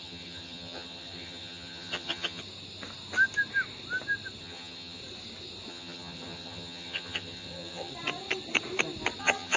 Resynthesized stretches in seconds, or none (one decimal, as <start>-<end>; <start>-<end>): 0.0-2.4; 4.4-5.0; 5.7-7.9; 9.2-9.6